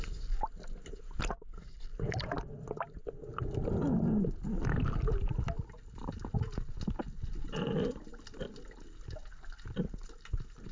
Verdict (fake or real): real